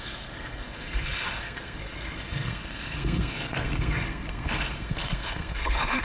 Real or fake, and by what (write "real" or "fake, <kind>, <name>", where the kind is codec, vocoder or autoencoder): fake, codec, SNAC